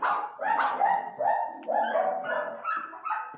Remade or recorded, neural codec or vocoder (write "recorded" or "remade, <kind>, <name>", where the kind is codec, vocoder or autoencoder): recorded